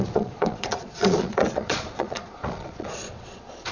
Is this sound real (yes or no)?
no